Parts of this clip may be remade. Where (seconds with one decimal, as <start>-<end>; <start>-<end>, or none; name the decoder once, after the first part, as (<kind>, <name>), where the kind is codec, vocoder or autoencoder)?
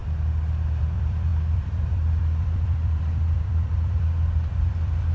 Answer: 0.0-5.1 (vocoder, BigVGAN v2)